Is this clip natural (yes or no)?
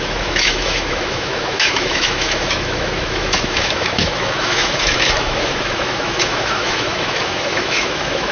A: no